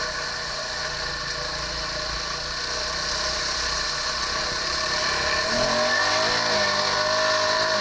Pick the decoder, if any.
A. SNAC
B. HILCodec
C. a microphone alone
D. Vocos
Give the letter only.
C